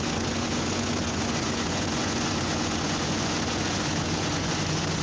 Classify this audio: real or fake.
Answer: fake